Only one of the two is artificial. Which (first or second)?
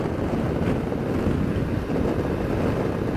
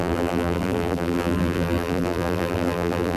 second